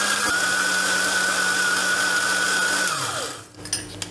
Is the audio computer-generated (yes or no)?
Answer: no